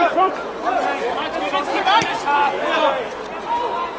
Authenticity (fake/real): real